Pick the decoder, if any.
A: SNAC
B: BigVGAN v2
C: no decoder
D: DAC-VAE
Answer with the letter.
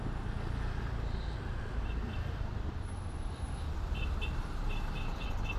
C